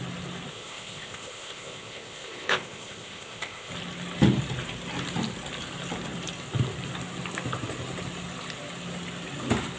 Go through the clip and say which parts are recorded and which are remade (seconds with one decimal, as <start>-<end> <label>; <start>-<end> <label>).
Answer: 0.0-0.5 recorded; 0.5-3.7 remade; 3.7-9.8 recorded

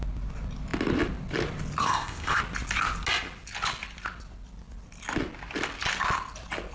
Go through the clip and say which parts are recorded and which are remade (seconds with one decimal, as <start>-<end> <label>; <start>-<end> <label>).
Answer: 0.0-1.8 recorded; 1.8-2.4 remade; 2.4-6.7 recorded